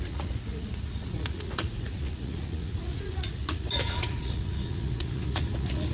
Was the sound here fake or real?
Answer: fake